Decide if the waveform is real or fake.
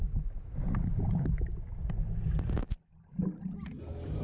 real